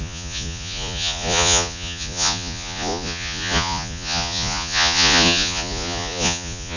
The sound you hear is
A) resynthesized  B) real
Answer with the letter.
A